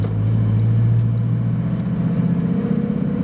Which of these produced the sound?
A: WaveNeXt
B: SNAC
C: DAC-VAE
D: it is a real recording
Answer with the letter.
D